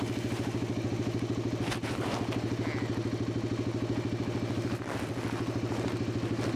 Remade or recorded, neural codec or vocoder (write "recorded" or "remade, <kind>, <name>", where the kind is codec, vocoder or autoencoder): recorded